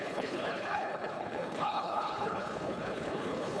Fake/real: fake